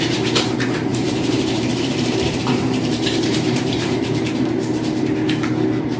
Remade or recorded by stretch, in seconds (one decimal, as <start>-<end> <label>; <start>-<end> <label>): 0.0-0.9 recorded; 0.9-4.3 remade; 4.3-6.0 recorded